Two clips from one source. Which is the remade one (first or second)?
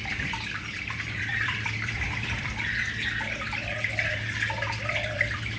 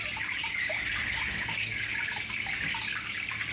first